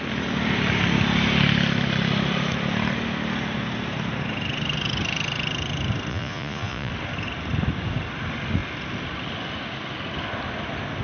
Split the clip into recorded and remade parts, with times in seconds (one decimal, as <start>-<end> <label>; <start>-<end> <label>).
0.0-6.1 recorded; 6.1-6.9 remade; 6.9-11.0 recorded